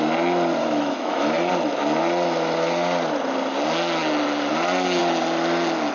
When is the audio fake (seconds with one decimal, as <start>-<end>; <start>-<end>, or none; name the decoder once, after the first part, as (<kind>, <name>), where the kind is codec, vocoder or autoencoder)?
0.6-1.5 (autoencoder, DAC-VAE)